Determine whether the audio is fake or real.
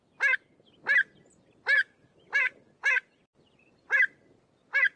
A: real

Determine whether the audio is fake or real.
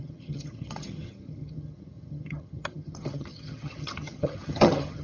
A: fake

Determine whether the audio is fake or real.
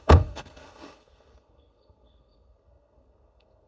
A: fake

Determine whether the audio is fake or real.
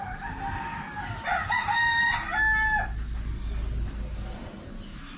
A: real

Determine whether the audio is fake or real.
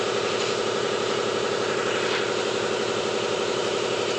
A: real